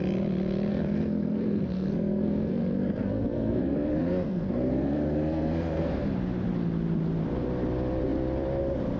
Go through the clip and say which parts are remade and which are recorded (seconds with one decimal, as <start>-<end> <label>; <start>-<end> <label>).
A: 0.0-0.7 recorded; 0.7-5.9 remade; 5.9-9.0 recorded